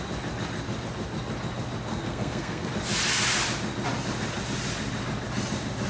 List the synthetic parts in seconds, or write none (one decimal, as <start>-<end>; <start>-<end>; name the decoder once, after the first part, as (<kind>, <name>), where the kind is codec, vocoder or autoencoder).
1.9-2.7 (codec, SNAC)